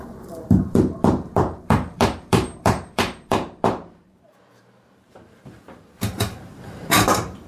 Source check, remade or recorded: remade